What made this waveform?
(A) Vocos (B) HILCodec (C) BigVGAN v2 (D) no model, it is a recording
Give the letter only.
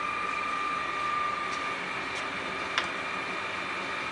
D